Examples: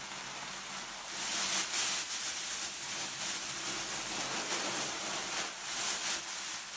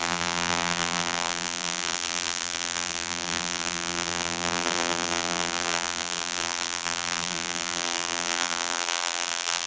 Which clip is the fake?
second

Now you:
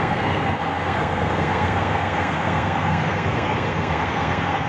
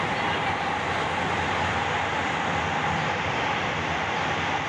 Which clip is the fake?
first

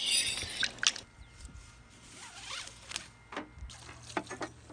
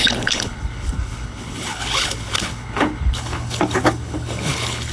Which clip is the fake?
second